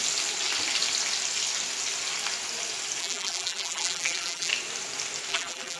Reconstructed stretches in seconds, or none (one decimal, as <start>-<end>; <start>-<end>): 3.0-4.5; 5.3-5.8